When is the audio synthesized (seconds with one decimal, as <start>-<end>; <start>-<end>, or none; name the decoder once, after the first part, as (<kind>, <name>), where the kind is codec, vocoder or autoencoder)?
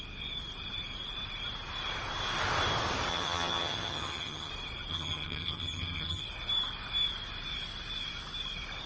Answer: 3.1-4.5 (vocoder, HiFi-GAN); 4.9-6.2